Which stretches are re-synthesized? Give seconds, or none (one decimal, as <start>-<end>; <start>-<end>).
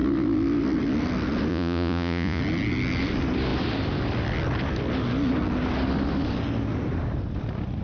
1.5-2.4